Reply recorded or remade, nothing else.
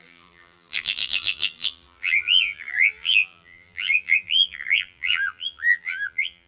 remade